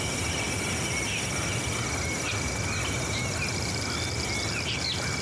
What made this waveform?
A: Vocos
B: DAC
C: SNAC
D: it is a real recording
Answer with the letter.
D